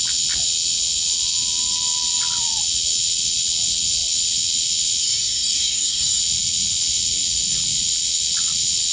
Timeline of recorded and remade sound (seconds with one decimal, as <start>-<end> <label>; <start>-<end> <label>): 0.0-5.0 recorded; 5.0-6.2 remade; 6.2-8.9 recorded